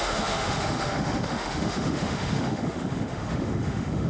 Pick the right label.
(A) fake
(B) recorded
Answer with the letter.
A